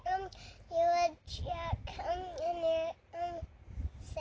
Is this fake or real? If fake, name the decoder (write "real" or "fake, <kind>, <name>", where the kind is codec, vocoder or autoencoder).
real